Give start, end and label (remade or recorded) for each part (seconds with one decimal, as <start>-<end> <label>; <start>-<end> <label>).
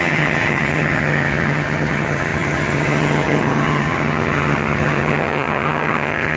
0.0-6.4 remade